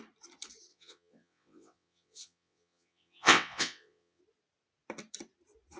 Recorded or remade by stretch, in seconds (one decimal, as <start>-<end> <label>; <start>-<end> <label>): 0.0-0.7 recorded; 0.7-4.2 remade; 4.2-5.8 recorded